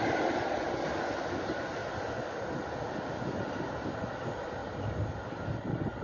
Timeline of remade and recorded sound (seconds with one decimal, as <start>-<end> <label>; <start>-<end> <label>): 0.0-1.8 recorded; 1.8-2.4 remade; 2.4-4.6 recorded; 4.6-5.3 remade; 5.3-6.0 recorded